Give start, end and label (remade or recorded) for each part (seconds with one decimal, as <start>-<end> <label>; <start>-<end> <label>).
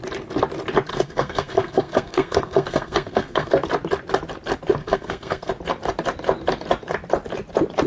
0.0-0.9 recorded; 0.9-3.5 remade; 3.5-4.8 recorded; 4.8-5.5 remade; 5.5-7.9 recorded